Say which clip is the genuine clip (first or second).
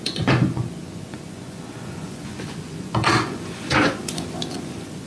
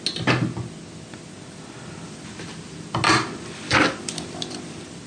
second